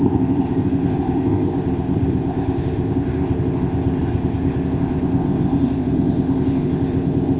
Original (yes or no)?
no